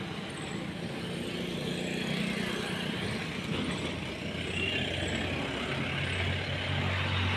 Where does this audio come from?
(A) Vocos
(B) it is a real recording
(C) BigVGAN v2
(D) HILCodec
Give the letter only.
B